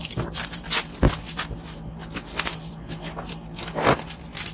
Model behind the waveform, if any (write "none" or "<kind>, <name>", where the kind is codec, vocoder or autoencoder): none